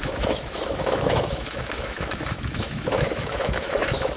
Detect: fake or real fake